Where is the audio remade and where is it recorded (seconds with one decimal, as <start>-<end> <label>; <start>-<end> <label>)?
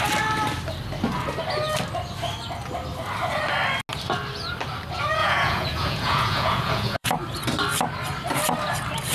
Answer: 0.0-5.2 recorded; 5.2-7.1 remade; 7.1-9.1 recorded